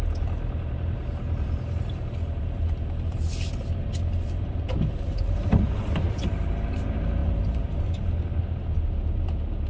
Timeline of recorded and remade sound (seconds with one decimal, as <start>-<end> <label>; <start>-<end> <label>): 0.0-7.2 recorded; 7.2-7.9 remade; 7.9-9.7 recorded